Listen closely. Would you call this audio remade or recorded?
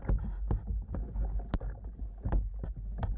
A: recorded